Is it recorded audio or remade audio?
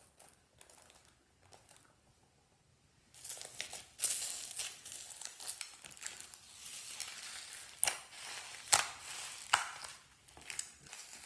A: recorded